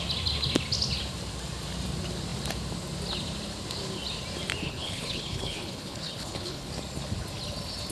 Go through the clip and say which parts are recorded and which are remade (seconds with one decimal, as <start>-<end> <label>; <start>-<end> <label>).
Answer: 0.0-4.6 recorded; 4.6-6.7 remade; 6.7-7.9 recorded

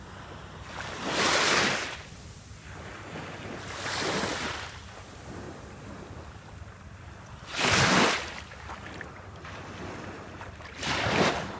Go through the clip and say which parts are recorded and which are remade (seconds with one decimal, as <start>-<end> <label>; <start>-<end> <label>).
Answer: 0.0-11.6 recorded

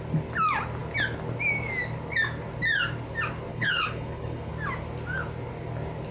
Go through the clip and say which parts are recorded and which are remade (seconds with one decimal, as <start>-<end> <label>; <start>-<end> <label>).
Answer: 0.0-3.5 recorded; 3.5-4.5 remade; 4.5-6.1 recorded

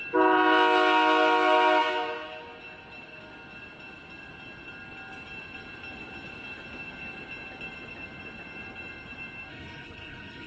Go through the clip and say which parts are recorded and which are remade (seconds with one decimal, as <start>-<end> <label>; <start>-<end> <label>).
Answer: 0.0-9.5 recorded; 9.5-10.5 remade

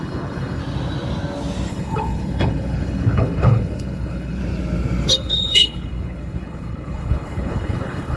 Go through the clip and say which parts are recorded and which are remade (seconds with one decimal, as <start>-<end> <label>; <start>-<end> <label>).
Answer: 0.0-0.6 remade; 0.6-1.7 recorded; 1.7-4.4 remade; 4.4-5.1 recorded; 5.1-8.2 remade

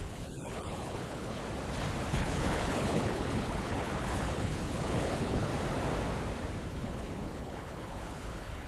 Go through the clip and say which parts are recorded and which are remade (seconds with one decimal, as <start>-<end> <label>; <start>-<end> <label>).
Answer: 0.0-1.4 remade; 1.4-2.1 recorded; 2.1-5.5 remade; 5.5-6.7 recorded; 6.7-8.7 remade

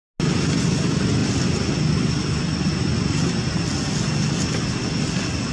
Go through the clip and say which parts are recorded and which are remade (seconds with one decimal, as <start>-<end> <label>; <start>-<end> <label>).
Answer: 0.0-5.5 recorded